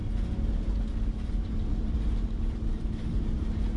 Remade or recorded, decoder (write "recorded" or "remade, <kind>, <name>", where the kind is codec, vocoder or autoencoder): recorded